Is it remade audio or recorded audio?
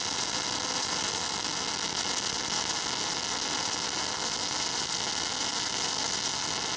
recorded